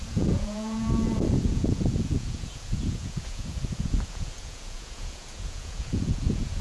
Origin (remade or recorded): remade